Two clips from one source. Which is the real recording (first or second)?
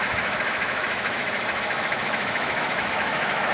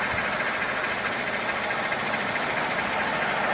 second